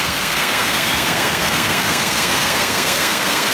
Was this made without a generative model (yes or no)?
no